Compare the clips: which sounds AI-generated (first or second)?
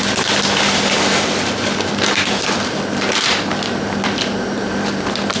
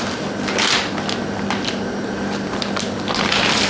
first